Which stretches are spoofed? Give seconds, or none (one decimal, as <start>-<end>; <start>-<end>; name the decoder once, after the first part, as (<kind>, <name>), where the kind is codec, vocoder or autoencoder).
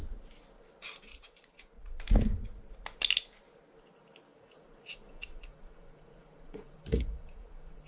1.0-2.0 (vocoder, Vocos); 4.3-7.9